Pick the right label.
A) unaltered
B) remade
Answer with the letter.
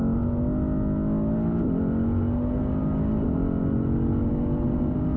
A